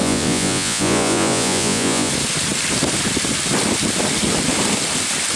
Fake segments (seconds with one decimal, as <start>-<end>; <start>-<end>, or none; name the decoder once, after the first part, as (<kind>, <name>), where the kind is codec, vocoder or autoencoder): 0.0-2.1 (vocoder, Vocos)

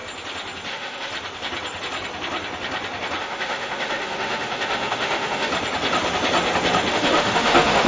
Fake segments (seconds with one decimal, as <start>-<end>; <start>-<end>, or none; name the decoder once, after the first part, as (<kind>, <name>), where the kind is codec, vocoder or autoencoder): 0.7-1.1 (autoencoder, DAC-VAE); 3.2-5.5; 6.9-7.9

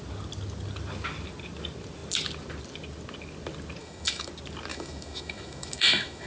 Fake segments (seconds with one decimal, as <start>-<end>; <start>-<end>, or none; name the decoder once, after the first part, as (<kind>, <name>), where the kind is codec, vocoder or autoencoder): 3.8-4.3 (autoencoder, DAC-VAE); 4.7-6.3

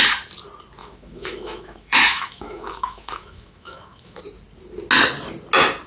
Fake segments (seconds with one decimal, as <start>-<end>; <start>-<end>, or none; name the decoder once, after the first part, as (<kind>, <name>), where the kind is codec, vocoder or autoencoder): 0.8-4.2 (autoencoder, DAC-VAE)

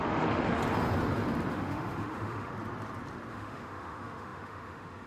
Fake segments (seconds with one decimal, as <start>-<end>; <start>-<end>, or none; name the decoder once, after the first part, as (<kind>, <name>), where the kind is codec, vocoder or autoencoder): 0.0-0.6 (autoencoder, DAC-VAE); 1.5-2.5; 3.3-5.1

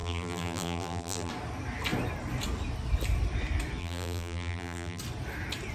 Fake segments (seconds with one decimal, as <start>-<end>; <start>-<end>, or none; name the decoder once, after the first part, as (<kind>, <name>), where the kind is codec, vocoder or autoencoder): 0.0-1.3 (vocoder, BigVGAN v2); 3.8-5.0

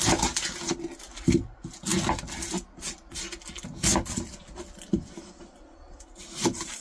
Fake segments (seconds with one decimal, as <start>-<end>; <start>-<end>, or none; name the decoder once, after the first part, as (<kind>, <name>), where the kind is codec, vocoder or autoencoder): none

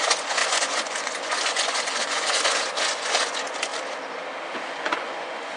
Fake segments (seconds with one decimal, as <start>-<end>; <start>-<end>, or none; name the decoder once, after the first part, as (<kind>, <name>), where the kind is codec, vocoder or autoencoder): 0.0-3.7 (vocoder, Vocos); 4.7-5.6